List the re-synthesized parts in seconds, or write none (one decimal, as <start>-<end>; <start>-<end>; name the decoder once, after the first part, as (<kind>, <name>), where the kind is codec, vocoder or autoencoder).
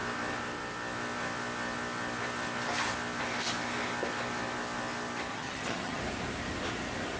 5.3-6.0 (vocoder, HiFi-GAN)